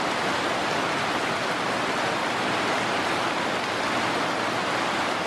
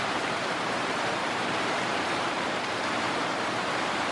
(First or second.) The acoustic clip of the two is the first